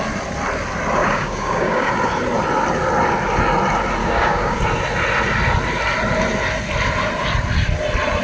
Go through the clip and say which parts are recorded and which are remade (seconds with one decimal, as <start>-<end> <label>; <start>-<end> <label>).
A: 0.0-1.0 recorded; 1.0-1.9 remade; 1.9-4.0 recorded; 4.0-4.6 remade; 4.6-8.2 recorded